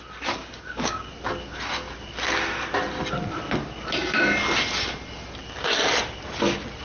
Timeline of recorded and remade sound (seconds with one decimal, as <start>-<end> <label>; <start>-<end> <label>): 0.0-0.4 recorded; 0.4-1.1 remade; 1.1-6.8 recorded